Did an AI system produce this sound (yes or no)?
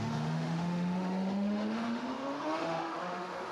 yes